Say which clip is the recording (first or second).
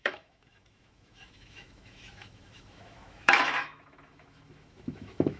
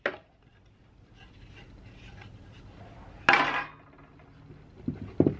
second